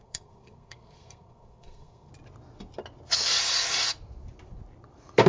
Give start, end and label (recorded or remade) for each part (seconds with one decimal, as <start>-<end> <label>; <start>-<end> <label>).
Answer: 0.0-2.1 remade; 2.1-5.3 recorded